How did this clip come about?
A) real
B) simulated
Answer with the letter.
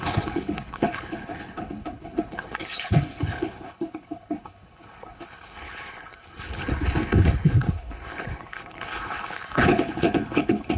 B